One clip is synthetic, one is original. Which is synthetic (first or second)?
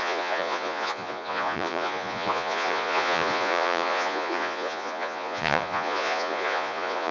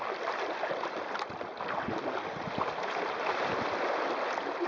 first